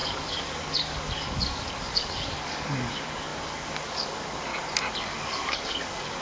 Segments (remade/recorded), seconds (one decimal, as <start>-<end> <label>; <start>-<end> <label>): 0.0-4.5 remade; 4.5-5.0 recorded; 5.0-6.2 remade